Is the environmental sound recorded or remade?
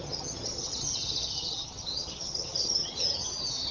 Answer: remade